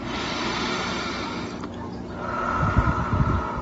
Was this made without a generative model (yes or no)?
yes